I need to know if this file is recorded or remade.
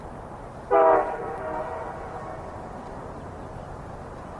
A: recorded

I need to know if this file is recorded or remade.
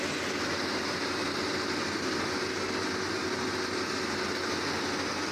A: recorded